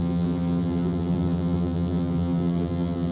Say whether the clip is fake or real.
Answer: fake